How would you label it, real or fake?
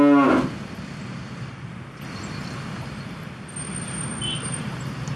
real